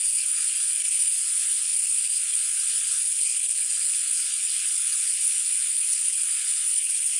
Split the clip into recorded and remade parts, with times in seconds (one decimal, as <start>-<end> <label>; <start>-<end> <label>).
0.0-7.2 remade